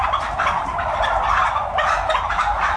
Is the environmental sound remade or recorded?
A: remade